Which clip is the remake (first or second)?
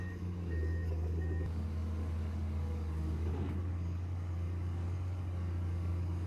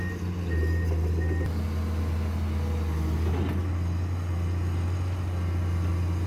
first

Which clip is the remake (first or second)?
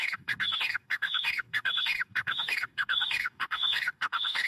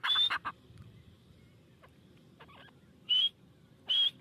first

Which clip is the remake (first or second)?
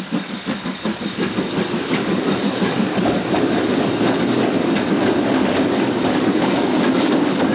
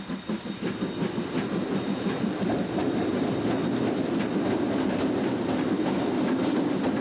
first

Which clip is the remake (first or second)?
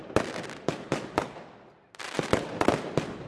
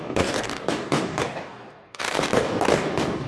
second